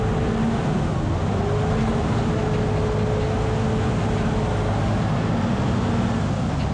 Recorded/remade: recorded